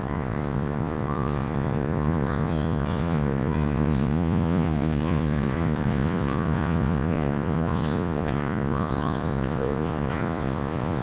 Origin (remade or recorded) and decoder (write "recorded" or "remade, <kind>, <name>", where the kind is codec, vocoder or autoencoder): remade, vocoder, Vocos